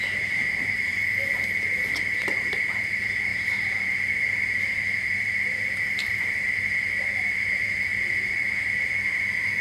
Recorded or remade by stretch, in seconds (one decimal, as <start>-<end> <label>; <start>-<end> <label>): 0.0-0.9 remade; 0.9-2.2 recorded; 2.2-7.9 remade; 7.9-8.6 recorded; 8.6-9.6 remade